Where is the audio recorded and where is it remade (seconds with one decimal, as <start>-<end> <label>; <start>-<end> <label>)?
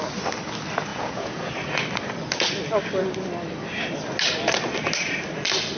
0.0-0.9 recorded; 0.9-1.5 remade; 1.5-5.8 recorded